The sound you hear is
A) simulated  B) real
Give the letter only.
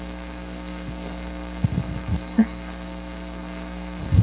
A